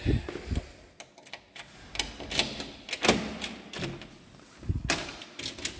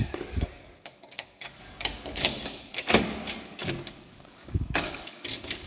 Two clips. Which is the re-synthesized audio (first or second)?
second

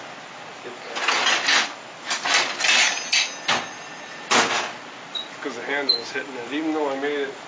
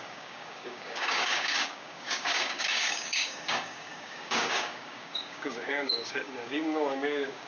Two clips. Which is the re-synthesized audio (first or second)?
second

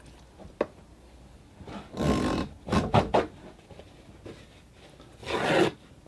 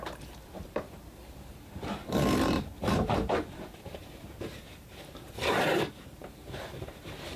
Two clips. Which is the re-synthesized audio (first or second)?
second